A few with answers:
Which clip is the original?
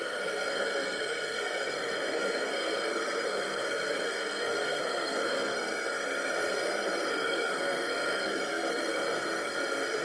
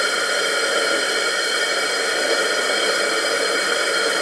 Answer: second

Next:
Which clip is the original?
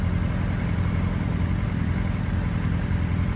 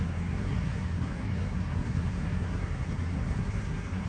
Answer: first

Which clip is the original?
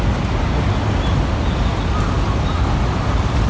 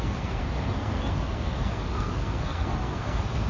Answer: first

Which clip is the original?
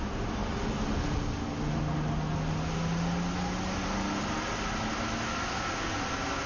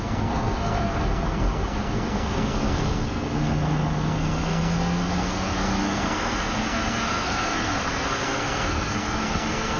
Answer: first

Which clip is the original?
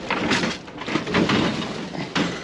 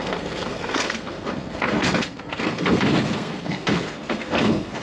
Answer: first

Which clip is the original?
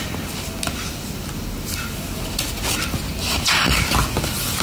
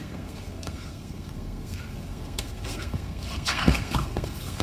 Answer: first